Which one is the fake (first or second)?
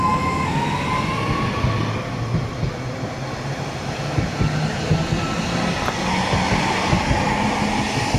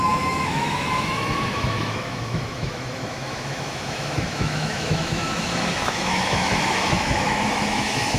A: second